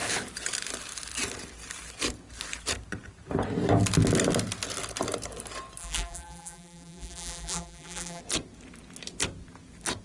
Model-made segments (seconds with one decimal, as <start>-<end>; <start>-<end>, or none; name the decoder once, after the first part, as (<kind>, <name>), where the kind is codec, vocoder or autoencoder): 5.8-8.2 (vocoder, BigVGAN v2)